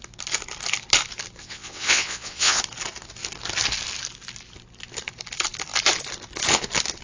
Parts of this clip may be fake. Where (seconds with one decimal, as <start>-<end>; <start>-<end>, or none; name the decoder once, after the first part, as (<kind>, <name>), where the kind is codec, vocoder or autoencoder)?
1.4-2.6 (vocoder, WaveNeXt)